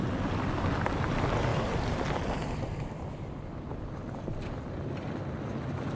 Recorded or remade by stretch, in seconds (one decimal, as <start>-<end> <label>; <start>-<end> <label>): 0.0-6.0 recorded